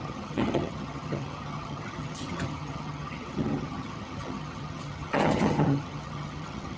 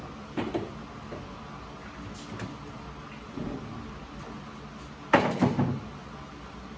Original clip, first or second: second